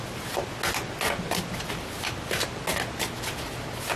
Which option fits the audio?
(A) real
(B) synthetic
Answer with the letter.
A